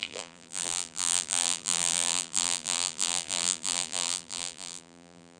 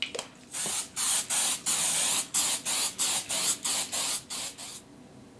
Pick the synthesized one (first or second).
first